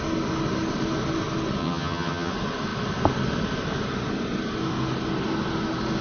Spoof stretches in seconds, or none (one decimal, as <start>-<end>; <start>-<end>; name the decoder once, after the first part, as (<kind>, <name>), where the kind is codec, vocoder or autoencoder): 1.6-2.3 (vocoder, HiFi-GAN)